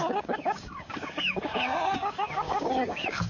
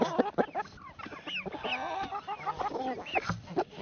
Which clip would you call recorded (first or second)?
second